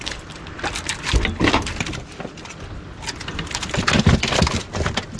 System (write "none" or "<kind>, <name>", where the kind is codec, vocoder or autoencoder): none